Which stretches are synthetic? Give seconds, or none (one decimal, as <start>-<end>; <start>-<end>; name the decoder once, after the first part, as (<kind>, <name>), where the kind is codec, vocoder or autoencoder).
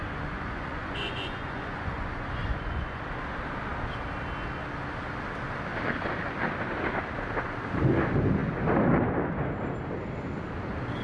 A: 0.0-3.0 (vocoder, Vocos)